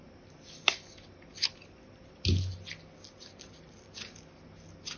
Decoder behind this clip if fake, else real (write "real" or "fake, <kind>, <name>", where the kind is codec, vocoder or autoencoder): real